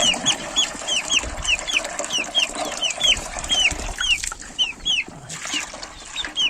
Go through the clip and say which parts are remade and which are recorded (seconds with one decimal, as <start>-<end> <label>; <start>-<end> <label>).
0.0-1.2 remade; 1.2-2.6 recorded; 2.6-3.7 remade; 3.7-6.5 recorded